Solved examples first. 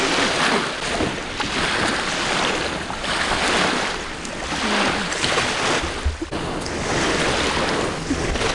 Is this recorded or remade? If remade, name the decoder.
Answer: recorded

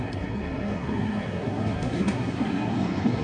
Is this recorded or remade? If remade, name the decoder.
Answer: remade, codec, SNAC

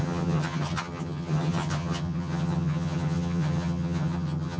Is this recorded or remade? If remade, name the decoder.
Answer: remade, vocoder, HiFi-GAN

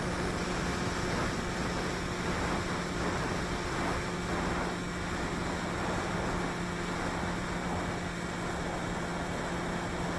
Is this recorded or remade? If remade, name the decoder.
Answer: recorded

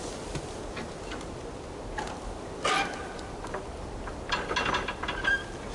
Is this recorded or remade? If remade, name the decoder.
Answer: recorded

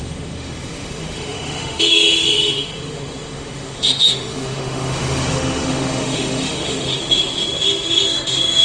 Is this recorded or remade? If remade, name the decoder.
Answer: remade, autoencoder, DAC-VAE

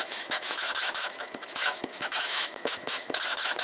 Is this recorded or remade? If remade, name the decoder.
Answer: remade, autoencoder, DAC-VAE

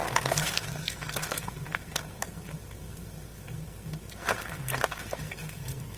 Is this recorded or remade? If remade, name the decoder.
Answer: remade, codec, SNAC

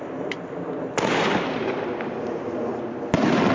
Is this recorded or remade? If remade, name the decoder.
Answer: recorded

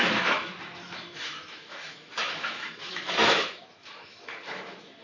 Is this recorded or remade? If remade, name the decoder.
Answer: remade, autoencoder, DAC-VAE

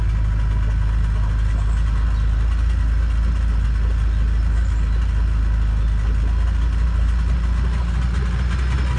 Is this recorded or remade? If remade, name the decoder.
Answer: recorded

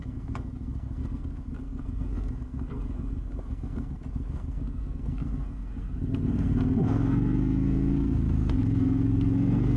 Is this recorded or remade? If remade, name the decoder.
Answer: remade, codec, SNAC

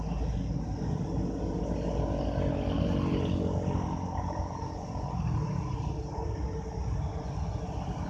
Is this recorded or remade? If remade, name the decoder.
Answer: recorded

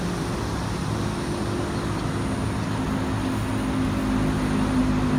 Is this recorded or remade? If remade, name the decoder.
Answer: recorded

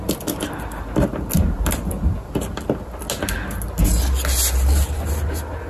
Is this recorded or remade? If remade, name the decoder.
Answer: recorded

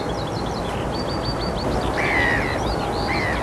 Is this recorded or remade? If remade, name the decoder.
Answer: recorded